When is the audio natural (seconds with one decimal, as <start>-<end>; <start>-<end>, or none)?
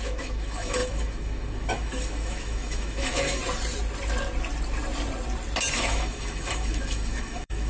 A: 3.4-5.7